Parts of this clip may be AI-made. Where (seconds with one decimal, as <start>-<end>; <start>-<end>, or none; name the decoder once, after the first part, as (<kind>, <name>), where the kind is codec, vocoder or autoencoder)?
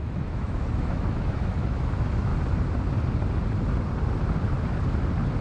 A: 0.0-2.3 (autoencoder, DAC-VAE)